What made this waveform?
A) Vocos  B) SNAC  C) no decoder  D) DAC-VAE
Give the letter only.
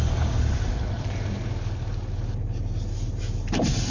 C